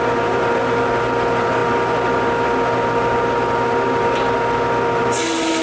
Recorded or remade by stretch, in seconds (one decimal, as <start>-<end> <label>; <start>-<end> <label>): 0.0-5.6 recorded